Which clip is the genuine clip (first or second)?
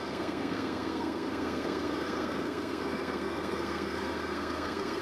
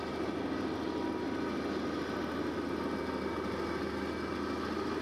second